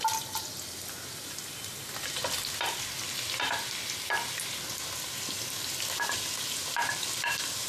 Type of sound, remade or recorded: recorded